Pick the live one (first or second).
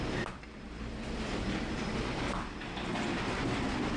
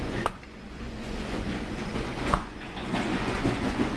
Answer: first